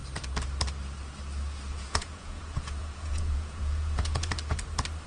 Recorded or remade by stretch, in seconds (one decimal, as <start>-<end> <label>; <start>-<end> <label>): 0.0-1.7 recorded; 1.7-4.3 remade; 4.3-5.1 recorded